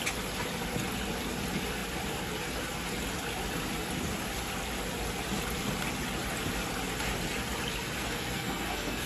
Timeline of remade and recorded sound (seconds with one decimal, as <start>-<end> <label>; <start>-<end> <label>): 0.0-8.0 recorded; 8.0-9.1 remade

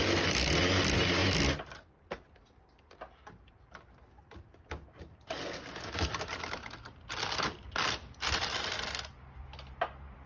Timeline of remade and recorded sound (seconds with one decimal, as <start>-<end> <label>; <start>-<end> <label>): 0.0-10.3 recorded

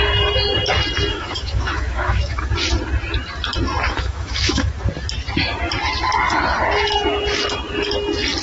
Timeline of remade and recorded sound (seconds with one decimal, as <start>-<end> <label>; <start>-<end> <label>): 0.0-1.1 recorded; 1.1-2.5 remade; 2.5-3.9 recorded; 3.9-4.7 remade; 4.7-8.4 recorded

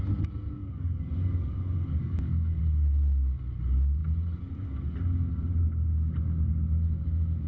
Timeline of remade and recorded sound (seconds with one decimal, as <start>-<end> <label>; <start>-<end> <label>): 0.0-0.6 recorded; 0.6-2.6 remade; 2.6-7.5 recorded

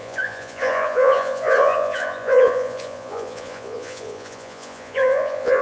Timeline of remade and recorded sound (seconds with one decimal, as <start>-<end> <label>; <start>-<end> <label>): 0.0-5.6 remade